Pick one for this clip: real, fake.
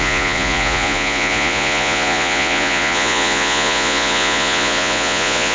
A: fake